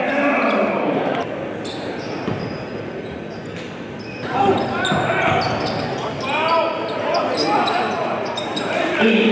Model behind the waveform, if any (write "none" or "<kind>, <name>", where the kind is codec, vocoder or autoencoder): none